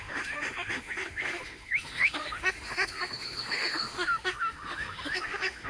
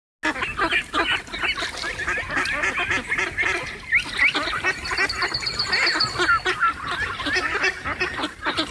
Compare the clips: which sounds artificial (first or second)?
first